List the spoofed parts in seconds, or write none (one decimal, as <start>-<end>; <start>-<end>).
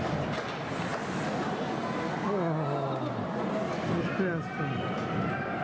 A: none